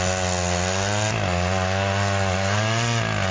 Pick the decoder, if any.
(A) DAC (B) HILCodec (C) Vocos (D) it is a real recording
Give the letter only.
D